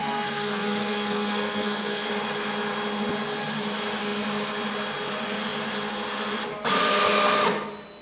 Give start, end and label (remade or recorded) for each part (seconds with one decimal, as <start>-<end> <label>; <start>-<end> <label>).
0.0-2.1 remade; 2.1-8.0 recorded